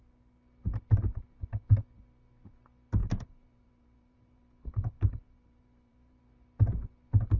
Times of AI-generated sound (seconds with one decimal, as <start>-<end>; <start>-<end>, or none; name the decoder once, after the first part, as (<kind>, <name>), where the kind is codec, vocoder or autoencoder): 3.0-6.2 (vocoder, BigVGAN v2)